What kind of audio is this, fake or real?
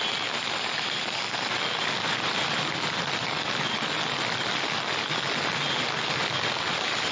real